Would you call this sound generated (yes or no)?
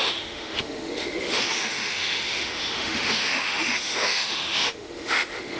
yes